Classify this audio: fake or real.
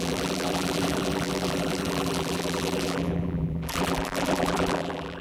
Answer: fake